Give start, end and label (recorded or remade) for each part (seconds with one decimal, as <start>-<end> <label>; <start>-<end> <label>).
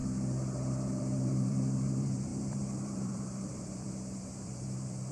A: 0.0-5.1 remade